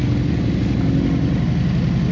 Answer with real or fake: real